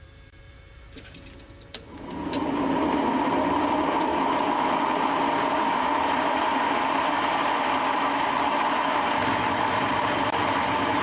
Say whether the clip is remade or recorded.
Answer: remade